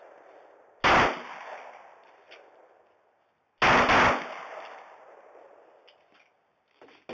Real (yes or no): yes